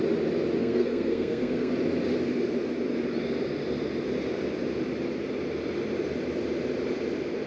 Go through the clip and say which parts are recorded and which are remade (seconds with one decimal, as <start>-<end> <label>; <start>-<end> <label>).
0.0-0.6 recorded; 0.6-1.7 remade; 1.7-7.5 recorded